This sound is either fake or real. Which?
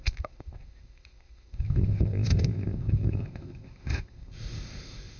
fake